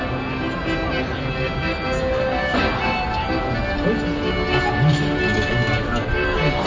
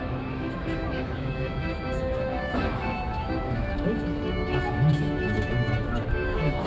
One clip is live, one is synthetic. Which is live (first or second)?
first